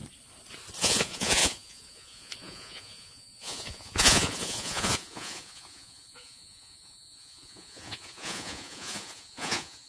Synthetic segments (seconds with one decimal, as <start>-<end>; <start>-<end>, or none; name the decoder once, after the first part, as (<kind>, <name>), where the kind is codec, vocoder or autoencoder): 0.8-9.9 (vocoder, Vocos)